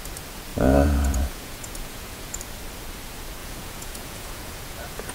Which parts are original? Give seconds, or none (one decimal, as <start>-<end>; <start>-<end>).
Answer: 0.0-0.5; 2.4-3.4